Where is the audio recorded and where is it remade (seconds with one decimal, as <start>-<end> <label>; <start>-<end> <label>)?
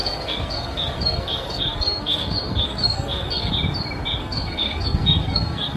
0.0-3.5 remade; 3.5-4.2 recorded; 4.2-5.8 remade